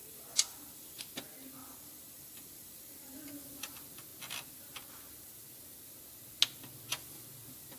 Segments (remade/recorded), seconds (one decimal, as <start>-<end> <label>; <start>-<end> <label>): 0.0-1.0 remade; 1.0-1.6 recorded; 1.6-3.3 remade; 3.3-7.8 recorded